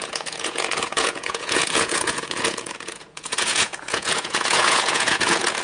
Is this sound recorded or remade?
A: remade